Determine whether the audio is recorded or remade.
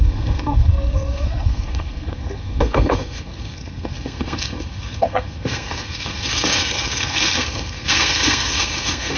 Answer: remade